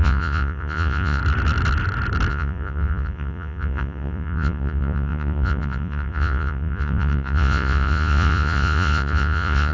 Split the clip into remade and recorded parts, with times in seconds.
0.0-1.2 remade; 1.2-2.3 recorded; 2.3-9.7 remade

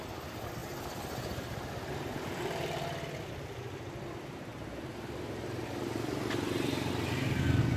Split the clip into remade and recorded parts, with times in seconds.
0.0-4.5 recorded; 4.5-5.8 remade; 5.8-7.8 recorded

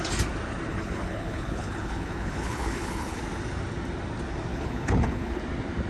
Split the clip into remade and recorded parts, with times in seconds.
0.0-0.7 recorded; 0.7-3.2 remade; 3.2-4.5 recorded; 4.5-5.4 remade; 5.4-5.9 recorded